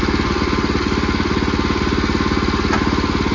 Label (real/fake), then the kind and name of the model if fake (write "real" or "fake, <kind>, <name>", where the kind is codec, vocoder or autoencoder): real